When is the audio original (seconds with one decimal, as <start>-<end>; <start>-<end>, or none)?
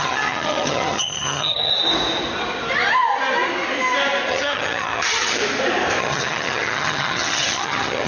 1.7-4.3; 5.4-6.0